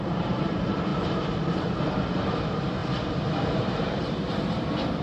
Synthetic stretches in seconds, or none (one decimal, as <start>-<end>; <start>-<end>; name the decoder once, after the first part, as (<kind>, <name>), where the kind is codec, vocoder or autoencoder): 0.0-2.8 (vocoder, BigVGAN v2); 3.5-5.0